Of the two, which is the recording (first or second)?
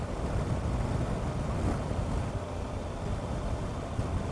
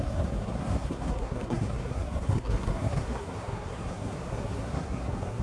first